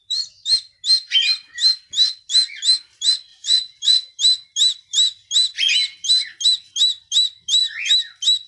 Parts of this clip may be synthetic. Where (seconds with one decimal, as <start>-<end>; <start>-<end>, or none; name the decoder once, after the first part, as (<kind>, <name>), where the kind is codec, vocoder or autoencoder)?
3.3-4.2 (vocoder, Vocos)